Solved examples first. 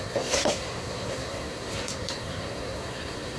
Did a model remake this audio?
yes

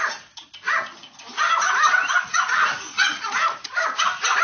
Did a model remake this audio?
no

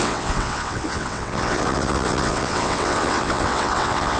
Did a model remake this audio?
yes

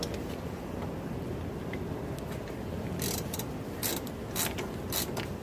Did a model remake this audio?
no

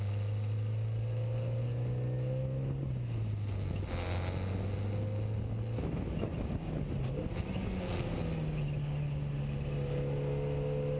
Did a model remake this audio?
no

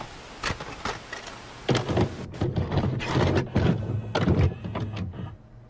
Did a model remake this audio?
no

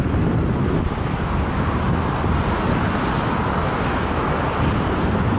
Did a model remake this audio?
no